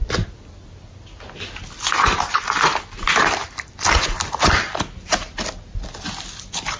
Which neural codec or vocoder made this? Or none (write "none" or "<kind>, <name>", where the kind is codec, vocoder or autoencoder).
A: none